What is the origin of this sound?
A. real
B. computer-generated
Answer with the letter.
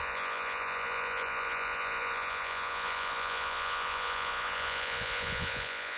B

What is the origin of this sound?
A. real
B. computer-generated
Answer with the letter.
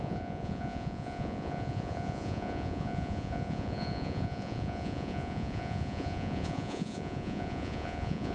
B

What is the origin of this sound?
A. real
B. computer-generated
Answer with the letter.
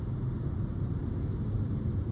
A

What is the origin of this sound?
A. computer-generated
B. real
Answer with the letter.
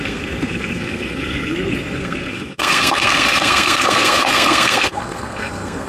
A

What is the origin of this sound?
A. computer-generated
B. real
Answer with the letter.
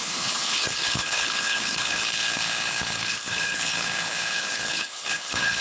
A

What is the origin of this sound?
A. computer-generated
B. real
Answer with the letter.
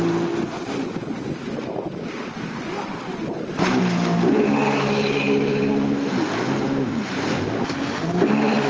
B